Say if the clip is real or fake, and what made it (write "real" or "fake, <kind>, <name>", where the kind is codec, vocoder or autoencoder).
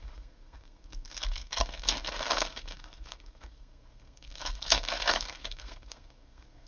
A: fake, codec, SNAC